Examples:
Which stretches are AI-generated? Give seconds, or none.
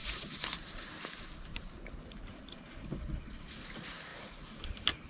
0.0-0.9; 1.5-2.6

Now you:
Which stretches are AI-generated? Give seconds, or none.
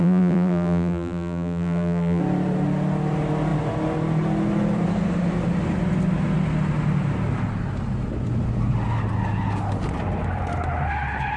0.0-2.2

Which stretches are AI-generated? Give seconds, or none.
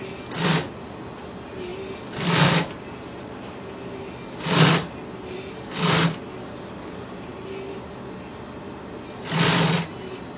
none